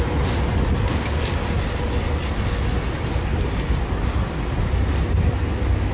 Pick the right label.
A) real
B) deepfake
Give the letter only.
A